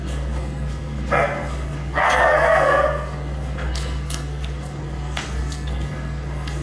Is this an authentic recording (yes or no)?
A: no